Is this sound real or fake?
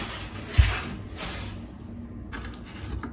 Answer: real